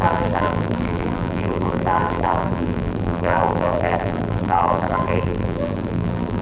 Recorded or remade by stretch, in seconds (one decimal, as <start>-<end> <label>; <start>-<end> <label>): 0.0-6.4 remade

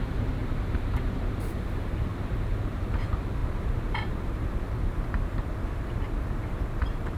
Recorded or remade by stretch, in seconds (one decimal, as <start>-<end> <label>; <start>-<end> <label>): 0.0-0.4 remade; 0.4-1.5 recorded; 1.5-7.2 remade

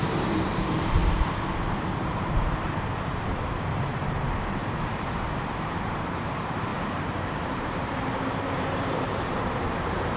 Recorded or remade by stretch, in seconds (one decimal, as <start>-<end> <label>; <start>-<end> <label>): 0.0-1.0 remade; 1.0-1.7 recorded; 1.7-4.6 remade; 4.6-5.2 recorded; 5.2-10.2 remade